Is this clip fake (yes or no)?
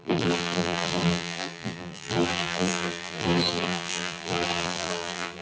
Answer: yes